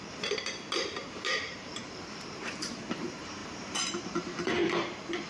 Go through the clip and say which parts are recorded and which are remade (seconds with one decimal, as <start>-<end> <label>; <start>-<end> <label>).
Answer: 0.0-4.6 remade; 4.6-5.3 recorded